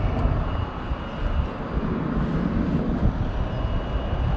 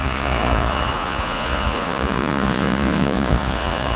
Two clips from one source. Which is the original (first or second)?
first